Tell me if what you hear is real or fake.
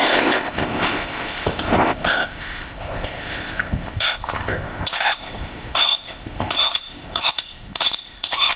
fake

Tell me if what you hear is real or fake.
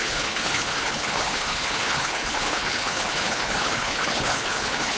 fake